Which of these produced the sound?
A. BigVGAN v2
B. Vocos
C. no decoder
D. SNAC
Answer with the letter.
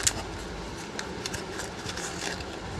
C